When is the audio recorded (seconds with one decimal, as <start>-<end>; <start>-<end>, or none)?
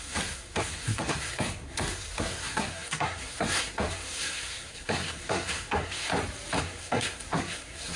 6.1-6.6